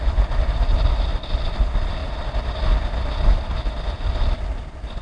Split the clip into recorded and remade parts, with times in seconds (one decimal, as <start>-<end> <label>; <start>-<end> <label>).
0.0-5.0 recorded